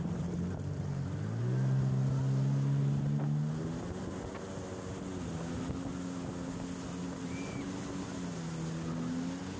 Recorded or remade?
recorded